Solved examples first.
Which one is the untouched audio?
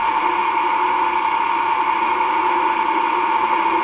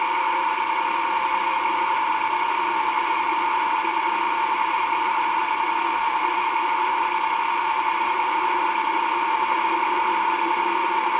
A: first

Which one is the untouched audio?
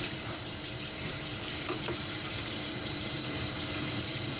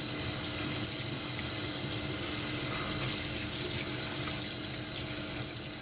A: second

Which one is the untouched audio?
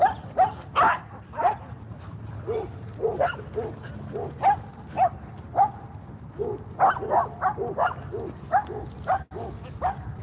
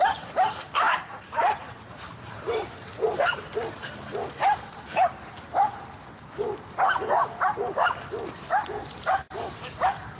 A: first